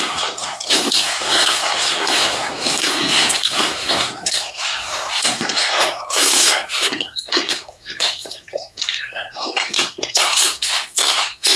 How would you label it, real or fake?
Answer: fake